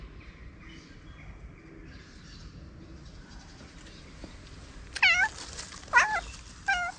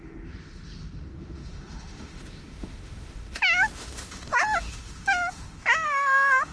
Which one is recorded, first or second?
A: first